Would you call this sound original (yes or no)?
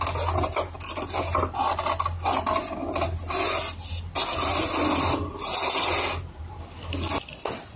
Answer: yes